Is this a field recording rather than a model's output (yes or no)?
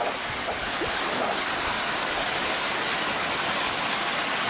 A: yes